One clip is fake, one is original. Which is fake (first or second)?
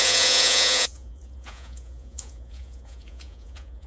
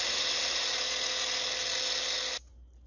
first